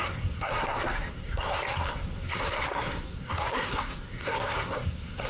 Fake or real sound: fake